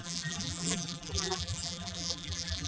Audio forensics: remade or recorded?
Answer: remade